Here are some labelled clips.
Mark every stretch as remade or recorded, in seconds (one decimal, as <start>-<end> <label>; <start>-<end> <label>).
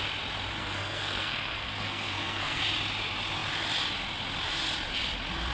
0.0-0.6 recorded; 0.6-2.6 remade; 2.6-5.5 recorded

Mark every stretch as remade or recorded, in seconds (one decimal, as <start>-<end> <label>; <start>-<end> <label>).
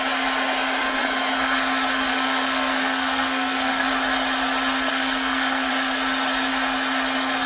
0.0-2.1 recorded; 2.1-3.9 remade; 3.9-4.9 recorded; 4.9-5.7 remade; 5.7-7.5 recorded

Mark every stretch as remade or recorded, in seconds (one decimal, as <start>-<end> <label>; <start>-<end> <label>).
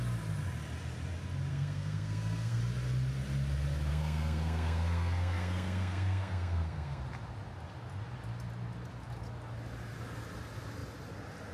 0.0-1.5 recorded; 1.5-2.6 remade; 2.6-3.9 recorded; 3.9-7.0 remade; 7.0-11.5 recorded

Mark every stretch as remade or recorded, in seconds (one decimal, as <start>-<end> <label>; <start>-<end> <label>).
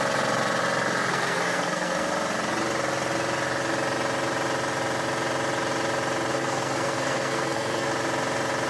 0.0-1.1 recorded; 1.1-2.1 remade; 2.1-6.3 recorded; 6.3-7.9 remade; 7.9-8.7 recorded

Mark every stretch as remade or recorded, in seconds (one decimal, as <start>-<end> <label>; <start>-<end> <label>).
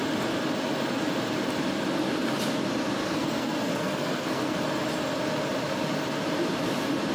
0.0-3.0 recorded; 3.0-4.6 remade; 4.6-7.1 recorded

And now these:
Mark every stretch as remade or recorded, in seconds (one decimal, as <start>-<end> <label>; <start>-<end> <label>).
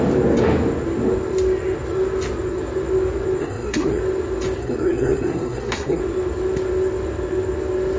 0.0-3.4 recorded; 3.4-4.0 remade; 4.0-4.6 recorded; 4.6-6.0 remade; 6.0-8.0 recorded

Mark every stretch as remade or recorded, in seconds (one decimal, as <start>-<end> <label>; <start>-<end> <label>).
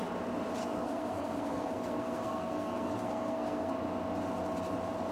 0.0-0.6 recorded; 0.6-3.7 remade; 3.7-5.1 recorded